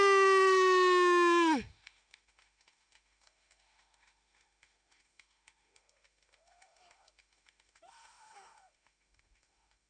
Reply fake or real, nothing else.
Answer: fake